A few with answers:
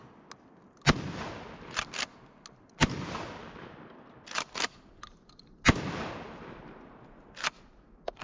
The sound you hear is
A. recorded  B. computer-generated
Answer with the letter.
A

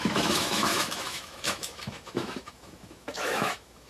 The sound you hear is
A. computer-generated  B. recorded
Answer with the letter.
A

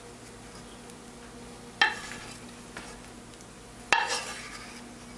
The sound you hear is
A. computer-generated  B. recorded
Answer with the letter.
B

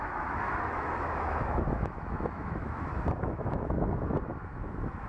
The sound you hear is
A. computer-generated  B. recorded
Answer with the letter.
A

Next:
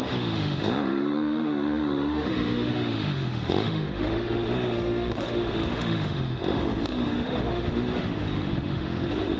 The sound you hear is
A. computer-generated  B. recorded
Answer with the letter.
A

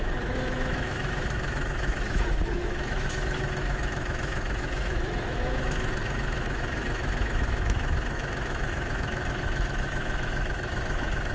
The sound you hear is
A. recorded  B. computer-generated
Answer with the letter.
B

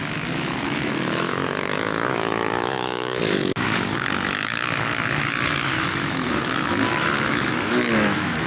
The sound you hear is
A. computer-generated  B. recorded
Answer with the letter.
A